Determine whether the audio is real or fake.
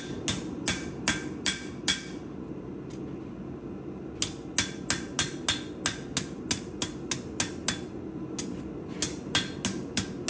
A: real